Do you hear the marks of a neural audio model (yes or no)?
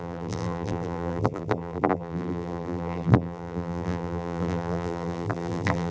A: yes